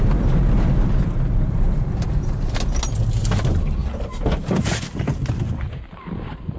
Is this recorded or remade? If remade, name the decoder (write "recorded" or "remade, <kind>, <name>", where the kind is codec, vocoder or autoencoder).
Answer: recorded